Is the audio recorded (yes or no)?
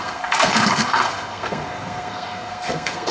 no